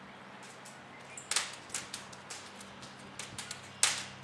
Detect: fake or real real